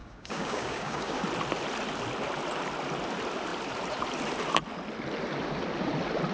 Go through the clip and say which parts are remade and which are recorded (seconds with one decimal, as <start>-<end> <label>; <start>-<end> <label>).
0.0-1.2 remade; 1.2-6.3 recorded

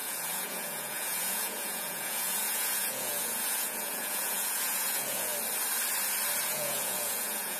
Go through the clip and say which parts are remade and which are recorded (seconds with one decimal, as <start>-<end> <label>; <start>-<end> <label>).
0.0-5.3 remade; 5.3-6.4 recorded; 6.4-7.6 remade

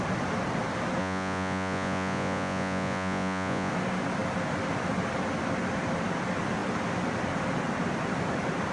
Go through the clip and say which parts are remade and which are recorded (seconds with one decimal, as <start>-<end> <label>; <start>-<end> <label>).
0.0-1.0 recorded; 1.0-3.7 remade; 3.7-8.7 recorded

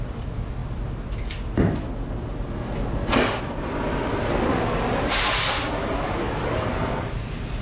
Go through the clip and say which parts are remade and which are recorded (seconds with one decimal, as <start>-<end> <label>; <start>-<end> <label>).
0.0-7.6 recorded

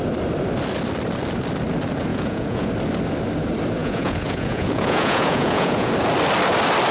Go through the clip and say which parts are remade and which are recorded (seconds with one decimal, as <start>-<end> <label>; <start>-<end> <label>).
0.0-2.1 recorded; 2.1-2.7 remade; 2.7-3.8 recorded; 3.8-5.9 remade; 5.9-6.9 recorded

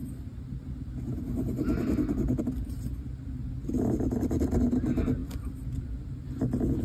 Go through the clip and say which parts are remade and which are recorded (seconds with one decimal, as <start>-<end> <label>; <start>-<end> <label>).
0.0-6.8 recorded

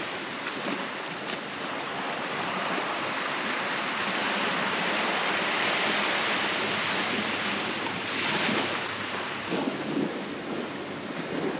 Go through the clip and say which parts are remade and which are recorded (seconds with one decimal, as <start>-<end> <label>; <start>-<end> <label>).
0.0-11.6 recorded